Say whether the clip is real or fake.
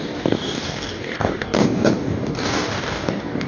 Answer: fake